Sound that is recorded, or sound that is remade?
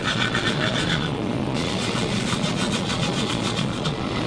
remade